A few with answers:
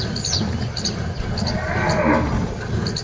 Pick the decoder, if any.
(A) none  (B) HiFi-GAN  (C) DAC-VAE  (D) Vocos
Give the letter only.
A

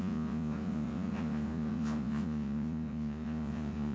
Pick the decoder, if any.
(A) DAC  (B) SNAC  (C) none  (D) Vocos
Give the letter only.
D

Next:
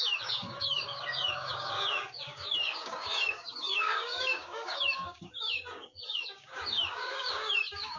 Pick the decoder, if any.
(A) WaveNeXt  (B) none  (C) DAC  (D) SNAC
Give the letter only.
C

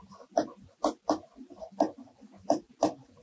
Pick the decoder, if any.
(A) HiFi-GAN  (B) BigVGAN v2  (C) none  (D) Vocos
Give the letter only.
C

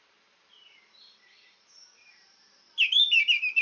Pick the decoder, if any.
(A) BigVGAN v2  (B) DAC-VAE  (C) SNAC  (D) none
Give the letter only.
A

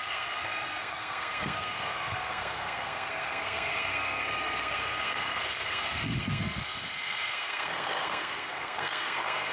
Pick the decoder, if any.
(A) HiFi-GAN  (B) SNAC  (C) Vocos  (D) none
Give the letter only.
B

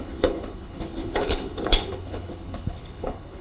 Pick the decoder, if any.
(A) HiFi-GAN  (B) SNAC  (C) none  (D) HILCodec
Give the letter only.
D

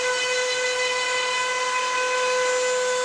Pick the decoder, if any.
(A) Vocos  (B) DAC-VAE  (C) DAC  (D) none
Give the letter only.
D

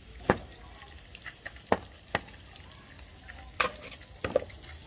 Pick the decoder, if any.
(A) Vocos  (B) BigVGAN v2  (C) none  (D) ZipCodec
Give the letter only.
C